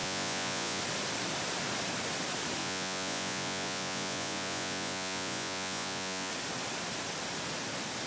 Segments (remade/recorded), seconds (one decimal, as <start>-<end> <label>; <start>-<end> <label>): 0.0-0.8 remade; 0.8-2.6 recorded; 2.6-6.3 remade; 6.3-8.1 recorded